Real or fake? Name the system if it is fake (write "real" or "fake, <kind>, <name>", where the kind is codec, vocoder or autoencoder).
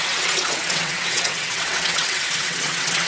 fake, vocoder, WaveNeXt